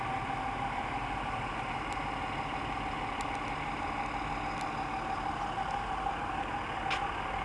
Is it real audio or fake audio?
real